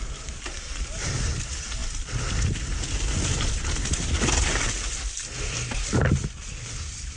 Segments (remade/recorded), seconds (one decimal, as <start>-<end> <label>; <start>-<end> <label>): 0.0-7.2 recorded